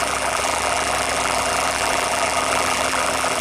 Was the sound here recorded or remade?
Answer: remade